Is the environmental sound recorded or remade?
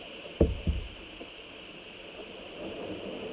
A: recorded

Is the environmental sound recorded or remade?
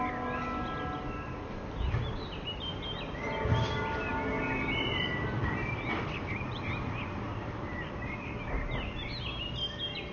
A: recorded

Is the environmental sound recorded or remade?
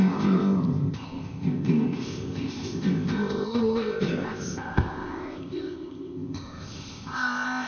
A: remade